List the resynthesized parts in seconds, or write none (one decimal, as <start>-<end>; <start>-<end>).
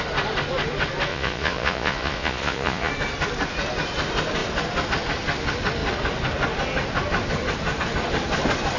1.1-2.9